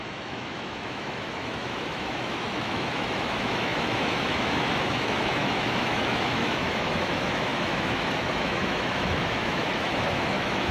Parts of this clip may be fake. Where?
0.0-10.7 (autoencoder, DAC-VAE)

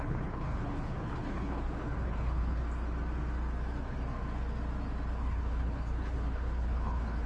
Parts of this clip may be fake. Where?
0.0-2.6 (codec, HILCodec); 5.1-7.3

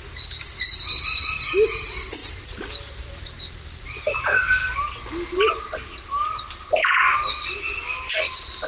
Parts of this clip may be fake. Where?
2.2-4.1 (vocoder, BigVGAN v2)

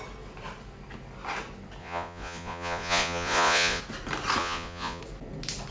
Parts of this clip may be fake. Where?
1.8-3.8 (vocoder, Vocos); 4.4-5.0